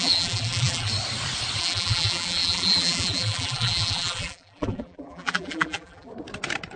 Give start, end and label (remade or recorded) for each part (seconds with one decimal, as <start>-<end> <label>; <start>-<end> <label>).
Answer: 0.0-0.9 remade; 0.9-1.6 recorded; 1.6-6.1 remade; 6.1-6.8 recorded